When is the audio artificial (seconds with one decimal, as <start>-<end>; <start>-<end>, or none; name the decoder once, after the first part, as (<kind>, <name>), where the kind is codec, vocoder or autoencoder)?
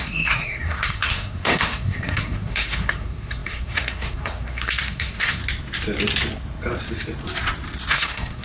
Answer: 0.0-5.4 (codec, SNAC); 7.9-8.4